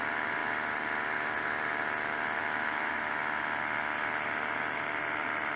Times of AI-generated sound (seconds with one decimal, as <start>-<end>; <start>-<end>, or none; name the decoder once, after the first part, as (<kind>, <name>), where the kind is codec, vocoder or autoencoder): 2.4-3.1 (autoencoder, DAC-VAE)